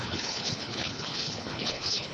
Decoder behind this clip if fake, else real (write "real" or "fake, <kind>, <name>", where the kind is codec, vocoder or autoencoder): fake, codec, HILCodec